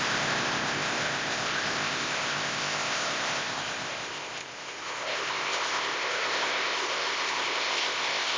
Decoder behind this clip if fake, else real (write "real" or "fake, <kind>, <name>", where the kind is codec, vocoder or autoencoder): fake, codec, ZipCodec